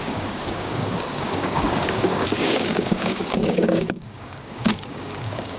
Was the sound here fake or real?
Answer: fake